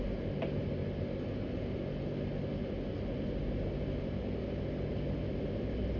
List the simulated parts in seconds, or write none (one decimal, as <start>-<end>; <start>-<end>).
none